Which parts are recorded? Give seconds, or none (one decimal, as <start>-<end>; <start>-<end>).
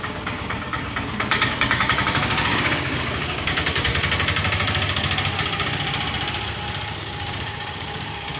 3.9-7.0